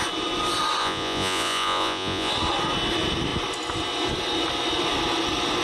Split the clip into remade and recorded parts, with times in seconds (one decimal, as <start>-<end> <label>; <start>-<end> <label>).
0.0-0.8 recorded; 0.8-2.3 remade; 2.3-5.6 recorded